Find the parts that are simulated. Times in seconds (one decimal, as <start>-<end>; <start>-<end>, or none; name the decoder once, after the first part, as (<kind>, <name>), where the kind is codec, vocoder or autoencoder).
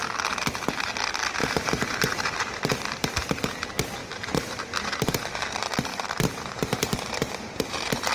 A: 1.4-3.3 (vocoder, BigVGAN v2); 4.0-5.2; 5.9-8.1